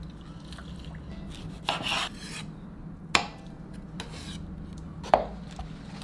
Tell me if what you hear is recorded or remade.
recorded